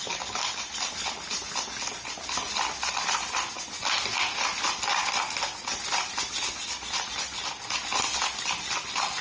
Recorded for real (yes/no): yes